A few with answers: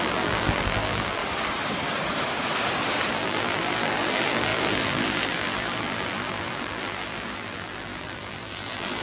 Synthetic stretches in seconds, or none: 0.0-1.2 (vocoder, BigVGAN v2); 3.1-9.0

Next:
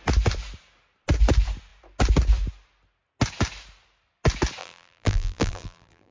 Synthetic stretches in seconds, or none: 4.6-6.1 (vocoder, BigVGAN v2)

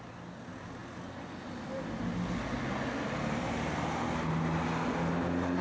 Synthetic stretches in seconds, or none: none

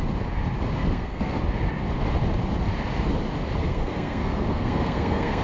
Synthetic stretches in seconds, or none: 0.8-1.4 (codec, SNAC); 3.6-5.4

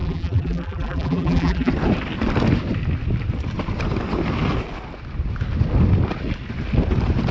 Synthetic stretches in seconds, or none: 0.0-1.7 (vocoder, BigVGAN v2)

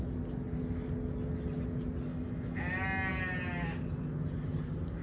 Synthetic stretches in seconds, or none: 2.1-2.6 (autoencoder, DAC-VAE)

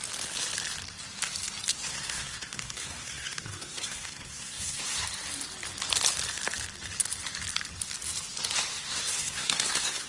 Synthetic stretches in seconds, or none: 1.7-5.0 (codec, SNAC); 8.7-10.1

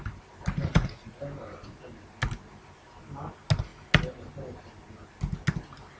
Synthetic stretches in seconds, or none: 0.7-1.2 (vocoder, Vocos)